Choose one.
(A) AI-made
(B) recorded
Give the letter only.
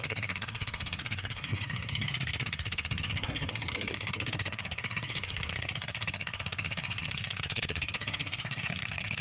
A